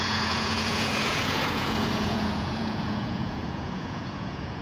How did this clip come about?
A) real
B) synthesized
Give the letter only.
B